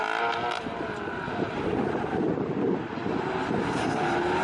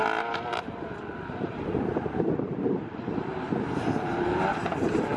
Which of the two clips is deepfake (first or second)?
second